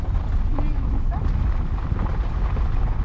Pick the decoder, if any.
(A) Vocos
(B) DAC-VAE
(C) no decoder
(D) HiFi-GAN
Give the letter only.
C